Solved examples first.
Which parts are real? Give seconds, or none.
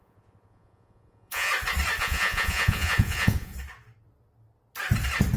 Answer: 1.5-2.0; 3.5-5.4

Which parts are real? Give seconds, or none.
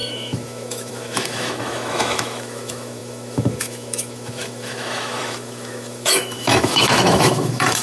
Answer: none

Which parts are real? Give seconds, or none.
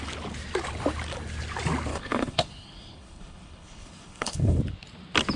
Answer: 0.0-1.9; 4.6-5.4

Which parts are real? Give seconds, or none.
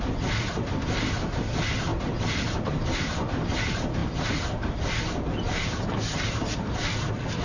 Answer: 0.0-7.4